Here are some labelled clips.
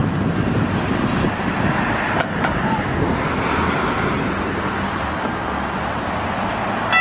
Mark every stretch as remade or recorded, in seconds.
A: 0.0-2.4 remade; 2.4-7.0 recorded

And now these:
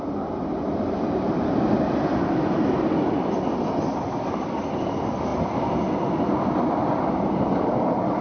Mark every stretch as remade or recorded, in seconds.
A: 0.0-8.2 recorded

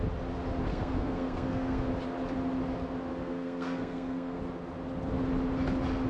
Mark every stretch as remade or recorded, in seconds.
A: 0.0-0.7 recorded; 0.7-1.9 remade; 1.9-3.1 recorded; 3.1-4.4 remade; 4.4-6.1 recorded